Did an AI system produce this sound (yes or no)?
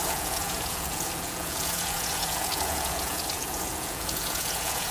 yes